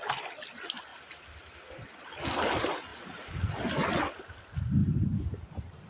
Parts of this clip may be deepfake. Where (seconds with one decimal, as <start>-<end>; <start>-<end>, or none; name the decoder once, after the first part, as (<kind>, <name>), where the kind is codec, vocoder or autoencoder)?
2.9-3.5 (vocoder, BigVGAN v2); 4.8-5.5